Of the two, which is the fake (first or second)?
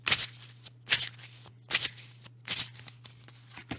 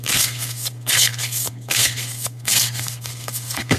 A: second